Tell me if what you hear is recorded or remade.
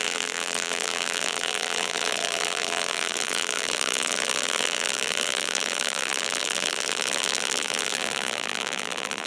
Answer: remade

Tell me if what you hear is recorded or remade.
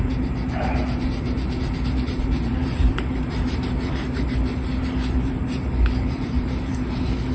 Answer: remade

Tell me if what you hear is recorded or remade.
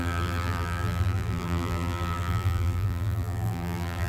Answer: remade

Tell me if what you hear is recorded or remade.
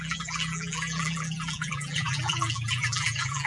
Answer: remade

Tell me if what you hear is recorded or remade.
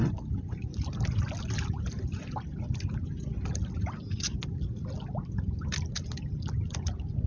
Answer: recorded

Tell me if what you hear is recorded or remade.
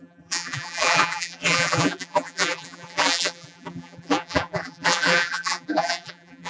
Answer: remade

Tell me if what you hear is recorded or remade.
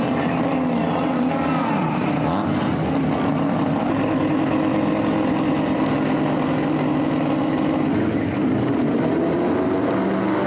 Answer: recorded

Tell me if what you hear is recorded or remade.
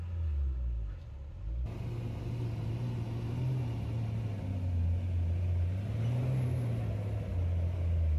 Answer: recorded